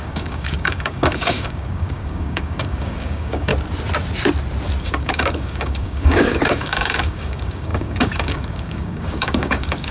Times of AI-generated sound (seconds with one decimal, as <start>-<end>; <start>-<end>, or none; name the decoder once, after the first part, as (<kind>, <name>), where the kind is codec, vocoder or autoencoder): 0.0-3.5 (codec, DAC); 4.8-9.9